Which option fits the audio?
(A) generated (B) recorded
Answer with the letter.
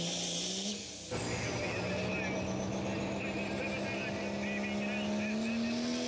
B